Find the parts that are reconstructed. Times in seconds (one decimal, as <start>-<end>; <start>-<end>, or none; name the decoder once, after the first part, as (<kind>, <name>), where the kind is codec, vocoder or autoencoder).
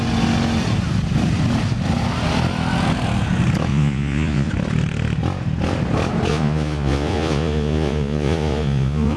3.7-4.5 (vocoder, Vocos); 6.3-9.2